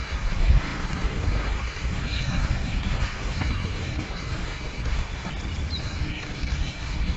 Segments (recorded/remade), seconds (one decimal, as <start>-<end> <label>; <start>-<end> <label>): 0.0-5.3 remade; 5.3-5.8 recorded; 5.8-7.2 remade